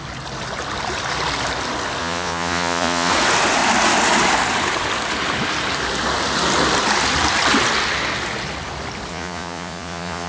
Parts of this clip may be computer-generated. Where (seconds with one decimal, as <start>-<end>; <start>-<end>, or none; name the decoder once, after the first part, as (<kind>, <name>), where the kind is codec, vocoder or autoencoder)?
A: 2.0-3.1 (vocoder, Vocos); 9.1-10.3